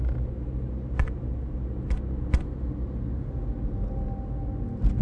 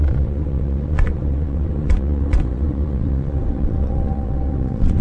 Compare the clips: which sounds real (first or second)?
first